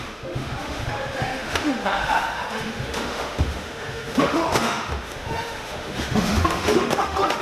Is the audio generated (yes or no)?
yes